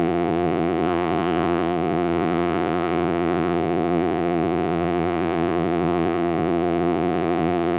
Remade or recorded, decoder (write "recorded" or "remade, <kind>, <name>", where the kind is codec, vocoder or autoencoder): remade, vocoder, Vocos